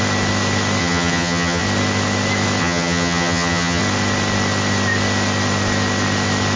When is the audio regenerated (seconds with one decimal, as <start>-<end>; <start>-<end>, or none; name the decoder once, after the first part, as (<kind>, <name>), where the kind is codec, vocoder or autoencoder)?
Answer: 0.8-1.6 (vocoder, HiFi-GAN); 2.6-3.8